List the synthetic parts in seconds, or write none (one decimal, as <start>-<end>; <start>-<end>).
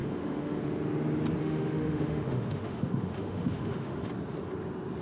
0.0-0.6; 1.4-4.1